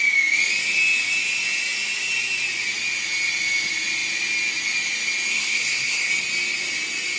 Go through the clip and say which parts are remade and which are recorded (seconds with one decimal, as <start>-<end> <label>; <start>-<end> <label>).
0.0-5.3 recorded; 5.3-6.1 remade; 6.1-7.2 recorded